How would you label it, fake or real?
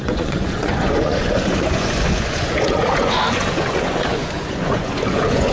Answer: fake